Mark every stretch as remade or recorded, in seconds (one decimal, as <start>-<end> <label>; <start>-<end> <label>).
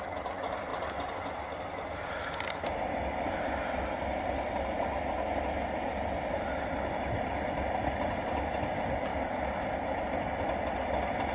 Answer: 0.0-11.3 recorded